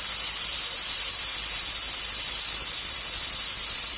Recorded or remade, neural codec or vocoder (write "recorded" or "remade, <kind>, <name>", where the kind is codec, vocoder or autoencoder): remade, vocoder, BigVGAN v2